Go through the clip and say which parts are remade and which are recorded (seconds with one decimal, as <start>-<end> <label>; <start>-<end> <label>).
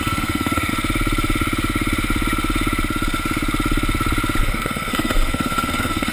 0.0-0.7 remade; 0.7-4.4 recorded; 4.4-6.1 remade